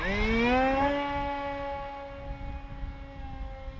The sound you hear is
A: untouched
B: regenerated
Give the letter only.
A